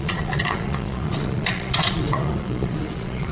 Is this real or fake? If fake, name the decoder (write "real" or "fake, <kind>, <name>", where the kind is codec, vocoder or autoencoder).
fake, vocoder, Vocos